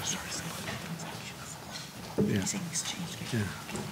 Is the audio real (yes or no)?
yes